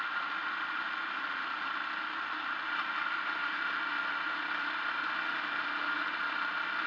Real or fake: real